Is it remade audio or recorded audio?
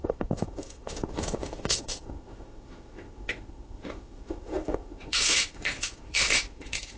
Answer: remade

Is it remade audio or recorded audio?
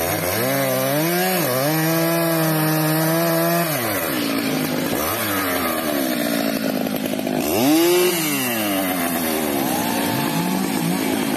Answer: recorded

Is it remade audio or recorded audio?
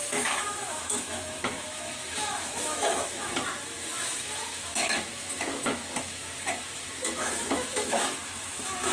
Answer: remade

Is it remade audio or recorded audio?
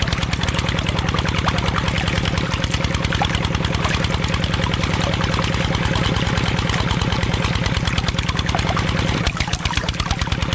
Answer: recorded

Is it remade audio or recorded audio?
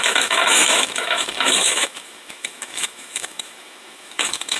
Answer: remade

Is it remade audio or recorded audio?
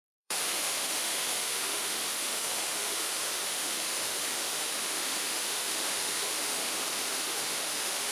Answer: remade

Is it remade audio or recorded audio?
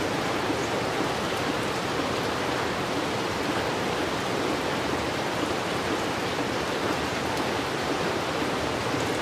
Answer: recorded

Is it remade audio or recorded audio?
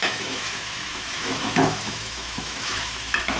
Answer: remade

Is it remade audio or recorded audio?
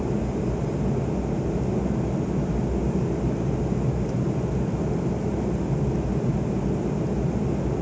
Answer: recorded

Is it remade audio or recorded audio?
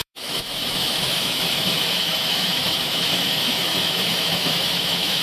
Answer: remade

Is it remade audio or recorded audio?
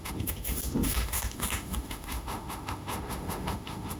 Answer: remade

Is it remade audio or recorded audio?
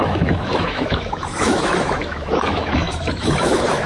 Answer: remade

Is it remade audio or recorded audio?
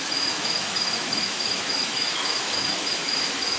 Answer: remade